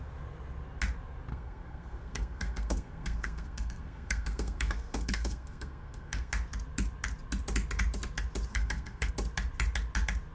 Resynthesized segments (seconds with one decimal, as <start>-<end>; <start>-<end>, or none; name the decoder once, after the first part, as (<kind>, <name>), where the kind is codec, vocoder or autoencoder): 1.3-6.3 (codec, SNAC); 8.5-9.1